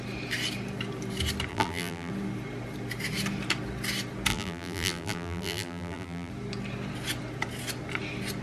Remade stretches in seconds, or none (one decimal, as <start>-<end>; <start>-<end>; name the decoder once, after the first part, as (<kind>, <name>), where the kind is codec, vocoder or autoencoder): 1.5-2.1 (vocoder, BigVGAN v2); 4.3-6.3